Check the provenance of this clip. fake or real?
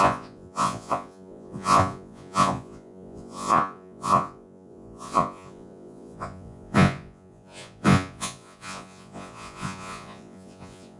fake